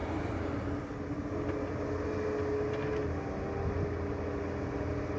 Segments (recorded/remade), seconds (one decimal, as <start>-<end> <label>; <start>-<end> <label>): 0.0-5.2 recorded